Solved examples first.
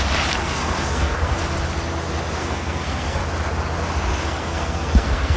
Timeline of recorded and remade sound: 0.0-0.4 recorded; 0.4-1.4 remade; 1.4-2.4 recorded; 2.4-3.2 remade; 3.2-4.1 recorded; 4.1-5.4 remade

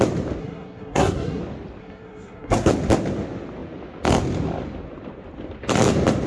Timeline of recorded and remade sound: 0.0-0.4 recorded; 0.4-1.4 remade; 1.4-1.8 recorded; 1.8-2.7 remade; 2.7-6.3 recorded

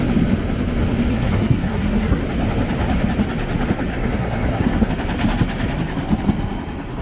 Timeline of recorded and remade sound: 0.0-1.1 recorded; 1.1-2.2 remade; 2.2-3.9 recorded; 3.9-4.9 remade; 4.9-7.0 recorded

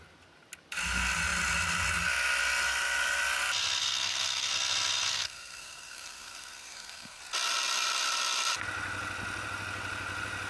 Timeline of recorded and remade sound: 0.0-3.8 recorded; 3.8-4.5 remade; 4.5-5.1 recorded; 5.1-7.2 remade; 7.2-10.5 recorded

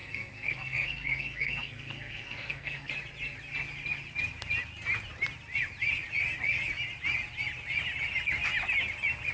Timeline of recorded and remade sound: 0.0-2.9 remade; 2.9-9.3 recorded

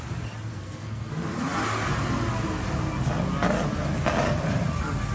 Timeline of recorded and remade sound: 0.0-0.5 recorded; 0.5-1.1 remade; 1.1-5.1 recorded

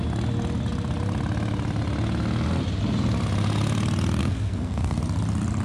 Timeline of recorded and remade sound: 0.0-4.2 recorded; 4.2-5.0 remade; 5.0-5.6 recorded

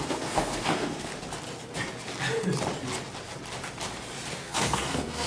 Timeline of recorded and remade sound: 0.0-1.1 remade; 1.1-4.3 recorded; 4.3-5.3 remade